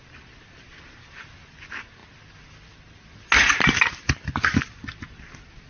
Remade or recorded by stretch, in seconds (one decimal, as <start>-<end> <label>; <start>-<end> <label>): 0.0-5.7 recorded